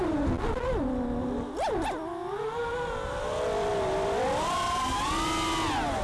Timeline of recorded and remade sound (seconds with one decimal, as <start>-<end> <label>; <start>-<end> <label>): 0.0-6.0 recorded